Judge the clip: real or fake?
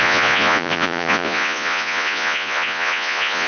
fake